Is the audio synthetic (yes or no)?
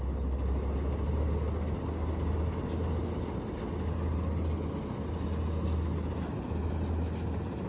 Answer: no